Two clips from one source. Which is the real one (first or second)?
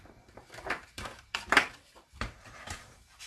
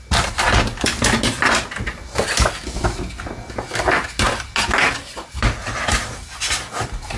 second